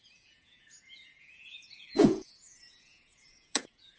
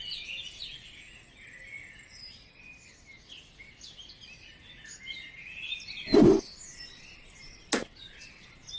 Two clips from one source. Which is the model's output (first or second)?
first